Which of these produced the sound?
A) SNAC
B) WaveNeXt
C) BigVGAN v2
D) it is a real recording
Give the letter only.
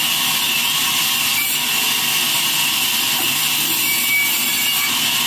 D